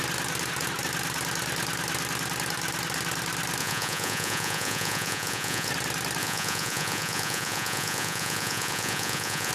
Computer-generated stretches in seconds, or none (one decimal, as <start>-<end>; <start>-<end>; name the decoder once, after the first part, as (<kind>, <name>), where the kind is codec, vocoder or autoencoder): 3.6-5.7 (vocoder, Vocos); 6.2-9.5